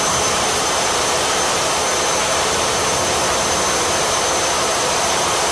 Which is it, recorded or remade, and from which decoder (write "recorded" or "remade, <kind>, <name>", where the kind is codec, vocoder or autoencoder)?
remade, vocoder, BigVGAN v2